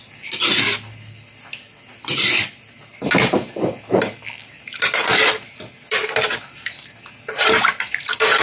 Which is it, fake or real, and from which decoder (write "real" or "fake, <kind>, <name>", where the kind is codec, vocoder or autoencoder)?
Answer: real